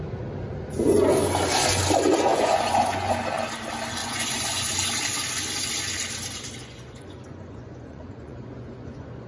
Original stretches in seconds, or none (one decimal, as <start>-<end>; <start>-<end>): 0.0-2.3; 3.2-4.0; 4.7-6.6